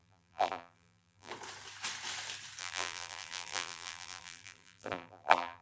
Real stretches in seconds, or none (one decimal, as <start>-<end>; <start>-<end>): 1.3-2.6